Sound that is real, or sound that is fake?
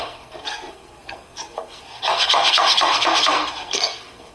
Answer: fake